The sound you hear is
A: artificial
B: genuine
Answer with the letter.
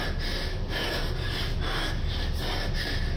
B